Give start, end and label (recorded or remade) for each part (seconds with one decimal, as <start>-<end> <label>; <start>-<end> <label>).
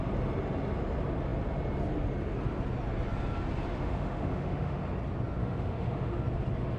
0.0-3.7 recorded; 3.7-4.8 remade; 4.8-5.4 recorded; 5.4-6.2 remade; 6.2-6.8 recorded